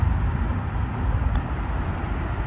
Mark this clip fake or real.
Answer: real